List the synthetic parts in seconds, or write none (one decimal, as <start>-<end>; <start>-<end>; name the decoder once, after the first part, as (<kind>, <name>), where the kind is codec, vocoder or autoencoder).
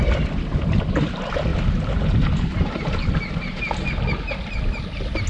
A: 1.5-3.6 (vocoder, BigVGAN v2)